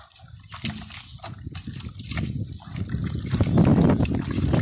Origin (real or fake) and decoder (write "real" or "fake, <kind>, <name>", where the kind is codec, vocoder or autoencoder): real